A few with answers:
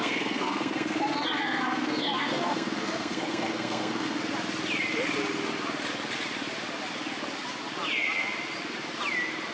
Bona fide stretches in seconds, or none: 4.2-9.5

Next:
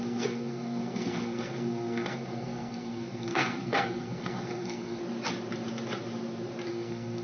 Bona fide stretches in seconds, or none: 5.0-6.7

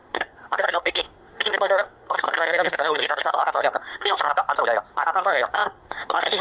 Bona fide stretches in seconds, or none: 4.3-4.9

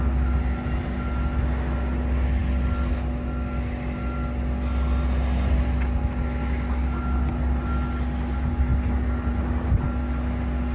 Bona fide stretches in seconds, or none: 0.0-10.7

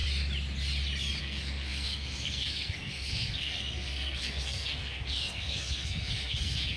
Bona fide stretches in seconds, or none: 0.0-1.2

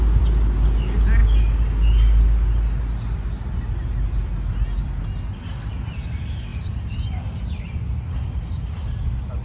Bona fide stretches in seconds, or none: 0.0-9.4